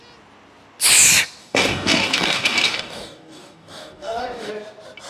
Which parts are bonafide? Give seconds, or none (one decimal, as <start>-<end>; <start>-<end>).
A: 0.0-1.4; 4.5-5.1